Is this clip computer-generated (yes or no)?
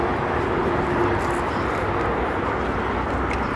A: no